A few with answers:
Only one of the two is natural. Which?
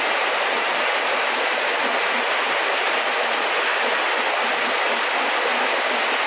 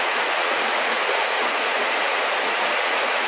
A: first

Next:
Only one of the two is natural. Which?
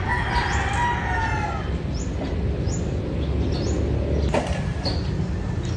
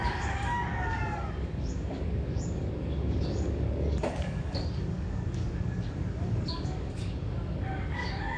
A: first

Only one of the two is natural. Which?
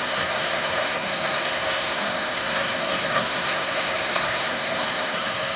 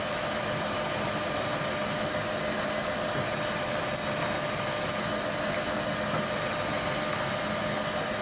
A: second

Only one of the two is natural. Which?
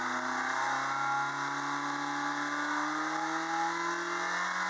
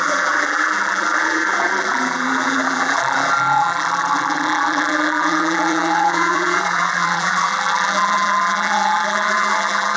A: first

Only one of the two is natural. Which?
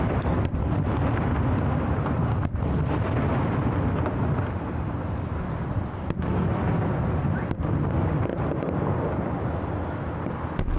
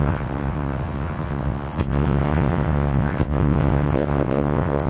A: first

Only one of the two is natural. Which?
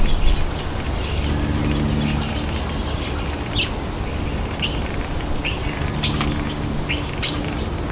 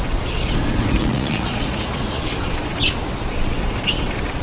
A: first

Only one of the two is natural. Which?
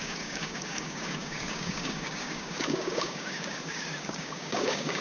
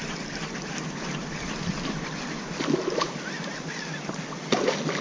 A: second